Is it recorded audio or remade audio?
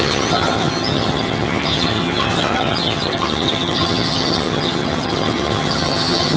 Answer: remade